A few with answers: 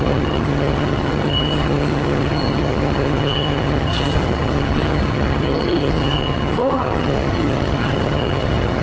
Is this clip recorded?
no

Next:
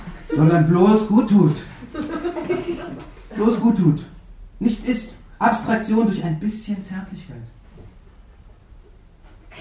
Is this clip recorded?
yes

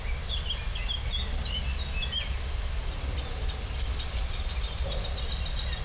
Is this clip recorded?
yes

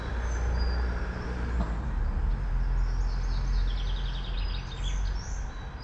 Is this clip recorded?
yes